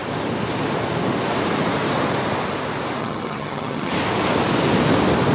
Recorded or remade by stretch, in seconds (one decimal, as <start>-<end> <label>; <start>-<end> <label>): 0.0-3.0 recorded; 3.0-3.9 remade; 3.9-5.3 recorded